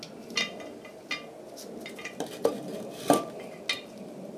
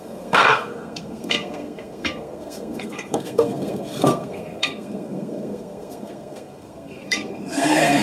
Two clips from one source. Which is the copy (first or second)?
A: second